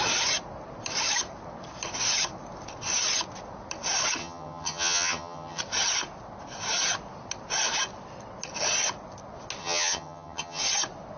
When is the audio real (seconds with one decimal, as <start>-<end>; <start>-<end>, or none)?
0.0-4.2; 5.6-9.6; 10.6-11.2